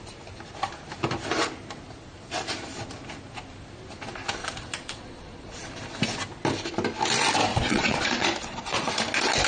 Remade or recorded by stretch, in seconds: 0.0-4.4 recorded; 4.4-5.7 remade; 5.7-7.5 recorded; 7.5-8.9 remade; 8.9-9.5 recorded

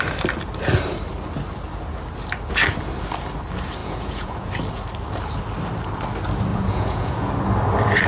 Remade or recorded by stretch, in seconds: 0.0-3.8 recorded; 3.8-4.5 remade; 4.5-6.5 recorded; 6.5-7.3 remade; 7.3-8.1 recorded

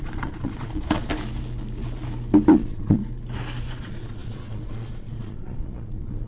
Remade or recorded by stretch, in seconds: 0.0-1.1 remade; 1.1-2.5 recorded; 2.5-3.0 remade; 3.0-3.6 recorded; 3.6-6.3 remade

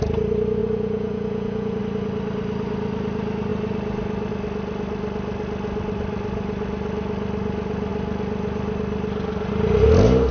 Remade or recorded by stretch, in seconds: 0.0-0.6 recorded; 0.6-1.8 remade; 1.8-10.3 recorded

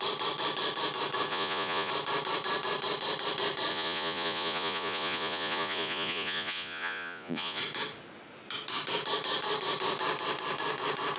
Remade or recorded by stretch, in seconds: 0.0-1.3 recorded; 1.3-1.9 remade; 1.9-3.7 recorded; 3.7-7.6 remade; 7.6-11.2 recorded

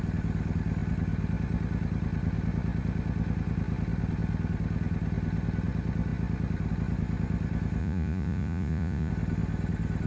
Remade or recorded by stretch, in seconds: 0.0-7.8 recorded; 7.8-9.1 remade; 9.1-10.1 recorded

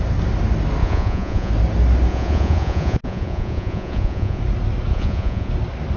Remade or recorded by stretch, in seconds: 0.0-0.8 recorded; 0.8-1.5 remade; 1.5-2.1 recorded; 2.1-4.4 remade; 4.4-4.9 recorded; 4.9-5.5 remade; 5.5-6.0 recorded